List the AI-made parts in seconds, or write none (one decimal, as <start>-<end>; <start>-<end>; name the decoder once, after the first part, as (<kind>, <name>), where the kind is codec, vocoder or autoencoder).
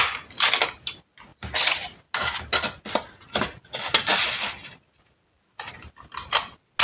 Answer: none